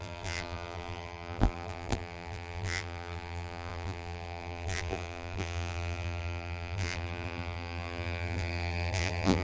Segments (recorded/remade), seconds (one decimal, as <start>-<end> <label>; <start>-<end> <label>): 0.0-9.4 remade